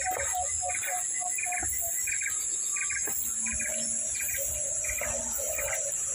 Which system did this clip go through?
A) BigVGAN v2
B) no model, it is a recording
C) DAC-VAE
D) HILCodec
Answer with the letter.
B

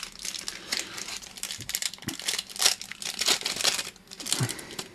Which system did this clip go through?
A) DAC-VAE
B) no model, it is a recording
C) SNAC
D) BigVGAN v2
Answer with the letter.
B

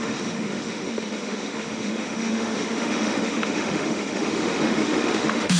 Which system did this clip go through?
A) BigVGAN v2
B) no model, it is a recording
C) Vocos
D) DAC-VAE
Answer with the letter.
D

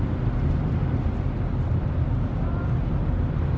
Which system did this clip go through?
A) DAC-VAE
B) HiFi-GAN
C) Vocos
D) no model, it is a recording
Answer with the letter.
D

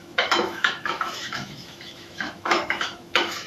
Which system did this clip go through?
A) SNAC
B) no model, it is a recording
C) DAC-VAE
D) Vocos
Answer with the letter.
C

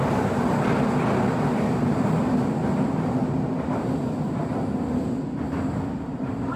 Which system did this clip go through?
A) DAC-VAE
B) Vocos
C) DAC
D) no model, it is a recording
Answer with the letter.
D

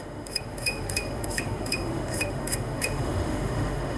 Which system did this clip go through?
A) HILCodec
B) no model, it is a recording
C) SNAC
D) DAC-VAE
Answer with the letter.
D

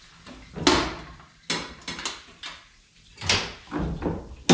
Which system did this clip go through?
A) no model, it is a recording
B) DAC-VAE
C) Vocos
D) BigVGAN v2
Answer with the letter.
A